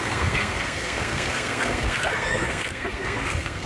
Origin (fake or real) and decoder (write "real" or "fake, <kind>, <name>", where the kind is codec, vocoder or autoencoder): fake, codec, SNAC